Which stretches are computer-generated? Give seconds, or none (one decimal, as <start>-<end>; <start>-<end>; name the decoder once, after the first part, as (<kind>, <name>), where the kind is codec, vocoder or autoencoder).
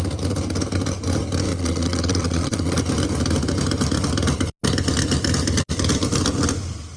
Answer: 1.5-2.8 (vocoder, Vocos)